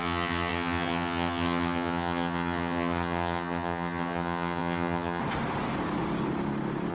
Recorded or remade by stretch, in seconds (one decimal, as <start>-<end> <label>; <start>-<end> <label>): 0.0-5.2 remade; 5.2-6.9 recorded